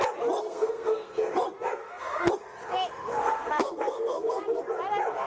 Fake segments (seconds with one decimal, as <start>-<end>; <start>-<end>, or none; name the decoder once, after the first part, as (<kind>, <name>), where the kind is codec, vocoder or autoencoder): 0.4-1.3 (codec, SNAC); 1.8-2.3; 3.2-4.6